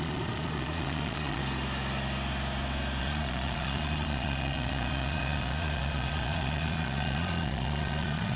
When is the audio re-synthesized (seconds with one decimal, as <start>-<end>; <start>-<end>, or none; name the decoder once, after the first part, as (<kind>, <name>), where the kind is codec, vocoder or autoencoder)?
0.0-1.4 (vocoder, Vocos); 3.0-8.4